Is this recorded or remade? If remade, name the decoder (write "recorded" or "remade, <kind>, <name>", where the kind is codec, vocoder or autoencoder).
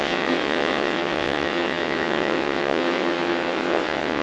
remade, vocoder, WaveNeXt